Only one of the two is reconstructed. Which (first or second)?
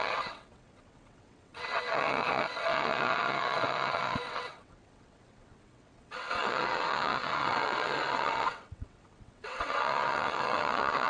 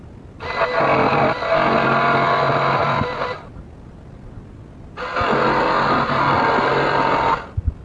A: first